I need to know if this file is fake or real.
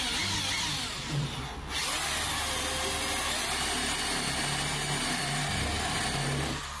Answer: real